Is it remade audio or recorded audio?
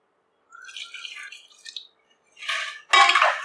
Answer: recorded